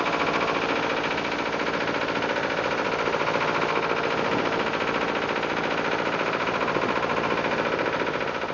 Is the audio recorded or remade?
recorded